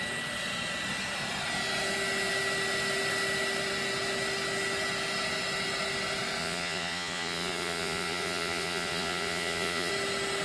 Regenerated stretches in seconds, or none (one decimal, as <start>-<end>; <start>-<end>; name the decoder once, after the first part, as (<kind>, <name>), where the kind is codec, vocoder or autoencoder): 6.4-9.9 (vocoder, Vocos)